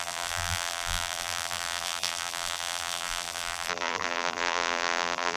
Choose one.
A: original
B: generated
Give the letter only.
B